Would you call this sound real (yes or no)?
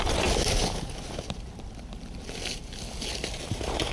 yes